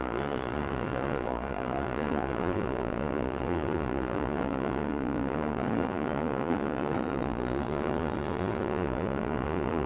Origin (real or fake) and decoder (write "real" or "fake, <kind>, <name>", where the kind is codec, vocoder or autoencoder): fake, vocoder, Vocos